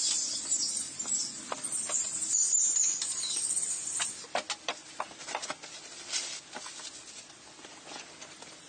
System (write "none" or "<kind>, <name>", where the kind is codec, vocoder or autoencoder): none